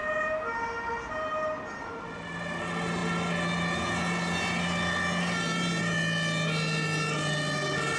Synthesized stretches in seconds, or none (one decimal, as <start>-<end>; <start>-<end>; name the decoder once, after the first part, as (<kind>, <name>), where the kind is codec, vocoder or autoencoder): none